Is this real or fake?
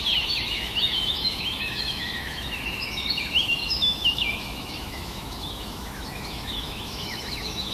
fake